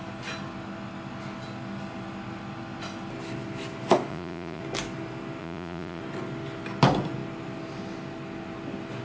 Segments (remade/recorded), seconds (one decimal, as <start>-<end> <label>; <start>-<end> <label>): 0.0-4.1 recorded; 4.1-4.6 remade; 4.6-5.4 recorded; 5.4-6.0 remade; 6.0-9.0 recorded